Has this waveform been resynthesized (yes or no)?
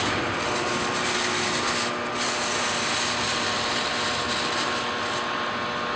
no